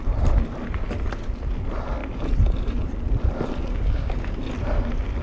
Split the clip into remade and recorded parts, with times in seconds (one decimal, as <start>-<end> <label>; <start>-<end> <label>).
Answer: 0.0-3.7 recorded; 3.7-4.4 remade; 4.4-5.2 recorded